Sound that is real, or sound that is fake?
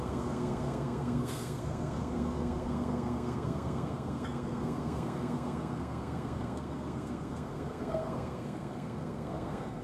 fake